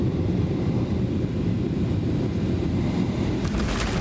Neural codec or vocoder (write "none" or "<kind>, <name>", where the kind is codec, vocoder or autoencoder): none